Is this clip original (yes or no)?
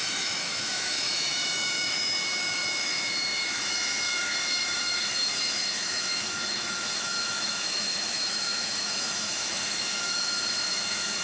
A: no